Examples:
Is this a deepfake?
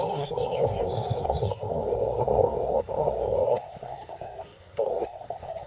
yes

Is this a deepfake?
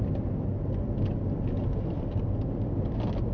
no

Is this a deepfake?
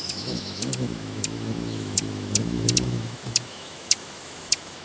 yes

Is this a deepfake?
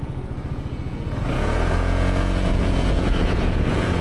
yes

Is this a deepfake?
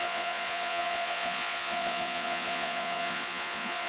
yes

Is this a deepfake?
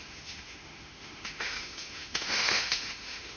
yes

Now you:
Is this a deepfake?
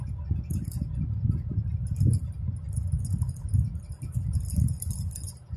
no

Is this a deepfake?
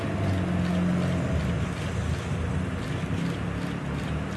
no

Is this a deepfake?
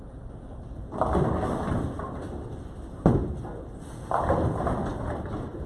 no